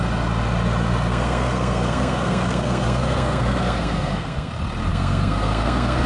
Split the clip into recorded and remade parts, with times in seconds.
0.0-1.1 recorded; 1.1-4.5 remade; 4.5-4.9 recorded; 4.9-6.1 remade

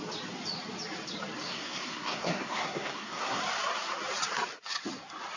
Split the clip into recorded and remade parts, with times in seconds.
0.0-1.4 recorded; 1.4-3.4 remade; 3.4-5.4 recorded